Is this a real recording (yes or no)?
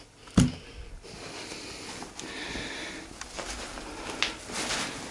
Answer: yes